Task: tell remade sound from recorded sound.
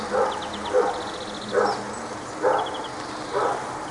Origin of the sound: recorded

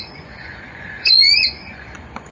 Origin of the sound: remade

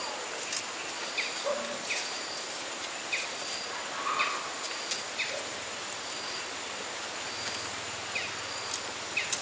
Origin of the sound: recorded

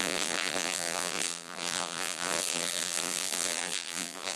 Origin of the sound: remade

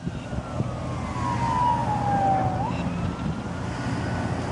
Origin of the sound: recorded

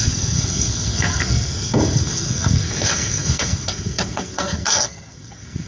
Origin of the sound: remade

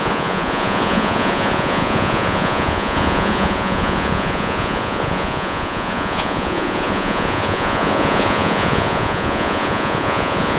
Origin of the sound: remade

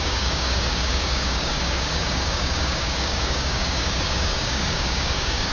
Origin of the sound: remade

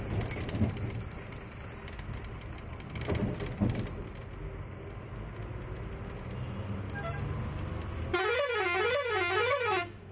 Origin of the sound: recorded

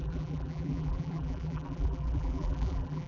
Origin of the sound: remade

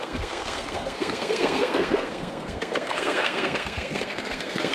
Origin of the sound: remade